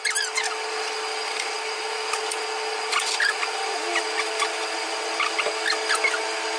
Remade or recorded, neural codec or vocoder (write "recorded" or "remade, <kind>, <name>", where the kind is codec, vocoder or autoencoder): recorded